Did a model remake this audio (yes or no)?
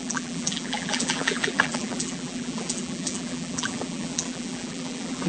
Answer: yes